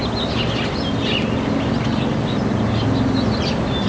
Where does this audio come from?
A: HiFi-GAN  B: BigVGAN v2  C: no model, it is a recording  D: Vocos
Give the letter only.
C